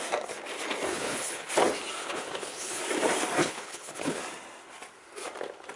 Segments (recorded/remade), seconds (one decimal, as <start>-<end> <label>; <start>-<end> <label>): 0.0-0.9 recorded; 0.9-1.5 remade; 1.5-2.0 recorded; 2.0-2.8 remade; 2.8-3.4 recorded; 3.4-4.2 remade; 4.2-5.8 recorded